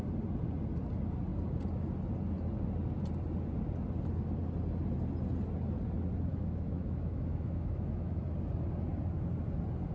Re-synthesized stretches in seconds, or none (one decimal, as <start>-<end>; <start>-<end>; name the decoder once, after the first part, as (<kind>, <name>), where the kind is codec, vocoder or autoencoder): 6.3-8.2 (autoencoder, DAC-VAE)